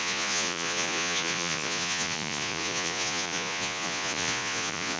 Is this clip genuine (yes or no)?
no